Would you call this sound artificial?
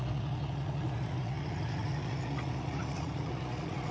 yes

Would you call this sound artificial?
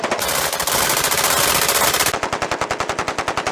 no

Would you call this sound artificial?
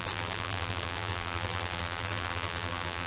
yes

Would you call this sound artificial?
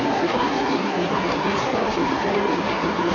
yes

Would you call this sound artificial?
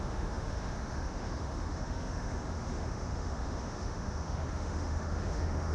yes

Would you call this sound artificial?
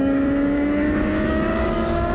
yes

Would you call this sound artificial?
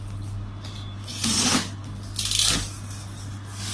no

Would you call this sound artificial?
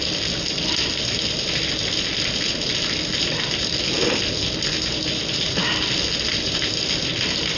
no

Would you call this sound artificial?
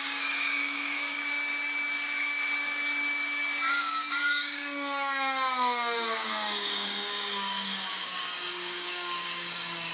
yes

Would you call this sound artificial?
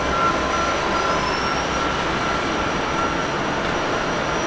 no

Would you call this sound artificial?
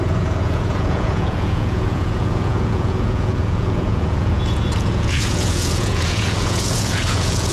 yes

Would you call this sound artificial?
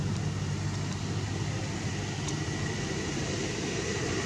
no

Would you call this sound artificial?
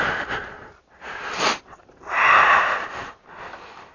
no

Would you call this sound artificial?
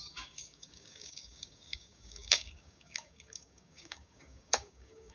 yes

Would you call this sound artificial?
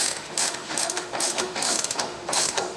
yes